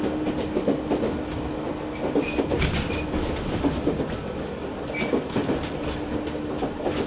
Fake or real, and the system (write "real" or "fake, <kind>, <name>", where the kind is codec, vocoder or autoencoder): real